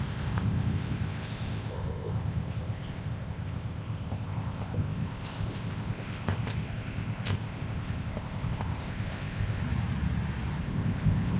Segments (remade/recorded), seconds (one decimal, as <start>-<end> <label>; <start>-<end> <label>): 0.0-9.6 remade; 9.6-10.6 recorded; 10.6-11.4 remade